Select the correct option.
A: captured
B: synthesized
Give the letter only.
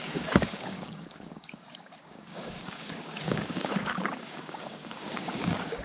B